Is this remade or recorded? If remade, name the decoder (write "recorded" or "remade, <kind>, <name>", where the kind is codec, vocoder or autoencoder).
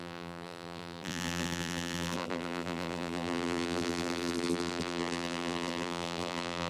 remade, vocoder, BigVGAN v2